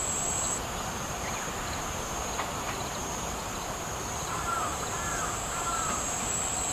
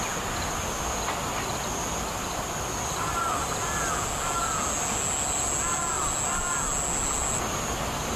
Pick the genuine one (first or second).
second